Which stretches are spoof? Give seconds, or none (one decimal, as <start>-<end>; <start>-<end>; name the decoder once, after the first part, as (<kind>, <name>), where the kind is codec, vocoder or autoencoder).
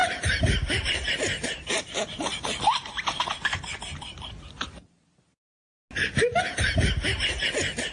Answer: 0.0-4.4 (vocoder, BigVGAN v2)